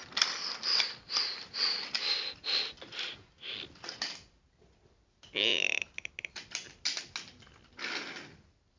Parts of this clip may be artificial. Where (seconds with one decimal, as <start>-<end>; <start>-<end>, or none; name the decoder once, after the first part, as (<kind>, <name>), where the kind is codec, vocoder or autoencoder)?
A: none